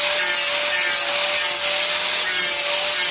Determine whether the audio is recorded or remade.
recorded